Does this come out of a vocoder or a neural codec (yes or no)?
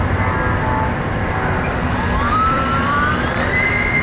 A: yes